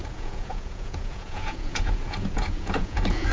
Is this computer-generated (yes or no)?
yes